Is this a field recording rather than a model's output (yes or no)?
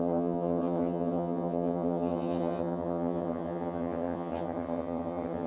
no